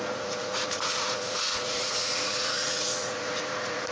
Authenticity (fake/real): fake